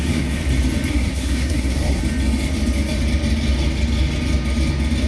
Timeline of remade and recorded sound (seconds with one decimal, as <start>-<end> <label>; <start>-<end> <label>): 0.0-0.4 remade; 0.4-0.9 recorded; 0.9-2.0 remade; 2.0-5.1 recorded